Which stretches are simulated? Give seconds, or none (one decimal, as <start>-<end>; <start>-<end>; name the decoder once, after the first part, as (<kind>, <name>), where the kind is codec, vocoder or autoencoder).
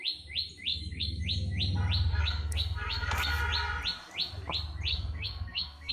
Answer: 0.7-1.2 (codec, SNAC); 2.1-3.4; 4.9-5.9